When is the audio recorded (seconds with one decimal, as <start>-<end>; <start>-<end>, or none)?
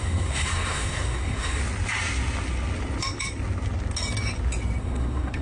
1.6-4.8